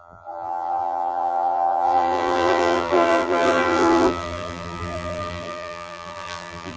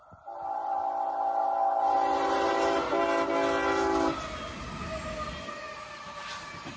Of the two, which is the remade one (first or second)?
first